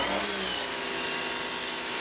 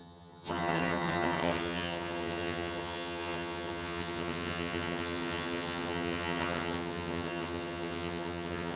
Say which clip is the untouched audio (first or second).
first